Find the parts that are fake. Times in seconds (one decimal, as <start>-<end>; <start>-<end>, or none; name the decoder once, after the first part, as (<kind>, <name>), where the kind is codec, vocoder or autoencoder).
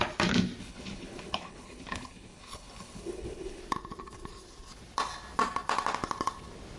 0.6-3.6 (codec, HILCodec)